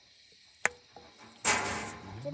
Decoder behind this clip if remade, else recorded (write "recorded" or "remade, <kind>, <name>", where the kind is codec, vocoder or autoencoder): recorded